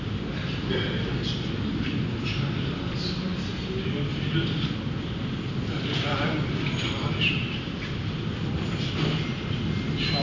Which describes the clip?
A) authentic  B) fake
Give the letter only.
A